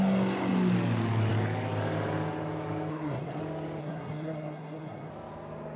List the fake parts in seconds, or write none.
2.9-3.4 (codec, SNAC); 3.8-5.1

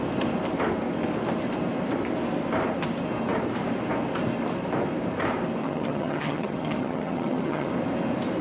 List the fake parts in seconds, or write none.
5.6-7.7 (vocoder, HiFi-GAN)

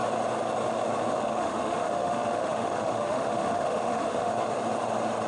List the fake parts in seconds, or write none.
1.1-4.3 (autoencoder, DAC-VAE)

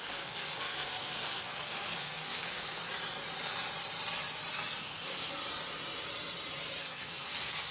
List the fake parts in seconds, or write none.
0.0-2.8 (codec, SNAC); 4.8-5.4; 6.8-7.7

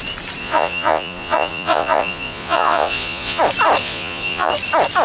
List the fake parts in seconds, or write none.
0.4-3.4 (vocoder, Vocos); 3.8-4.5

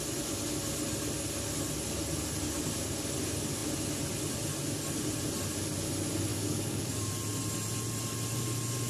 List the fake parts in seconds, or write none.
6.3-7.1 (codec, DAC)

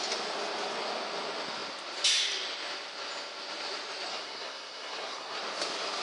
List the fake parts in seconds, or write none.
4.1-5.4 (codec, SNAC)